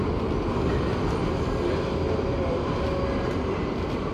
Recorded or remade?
recorded